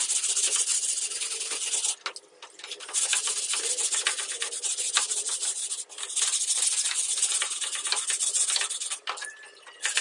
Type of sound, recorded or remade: recorded